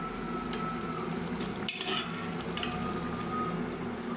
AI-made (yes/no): no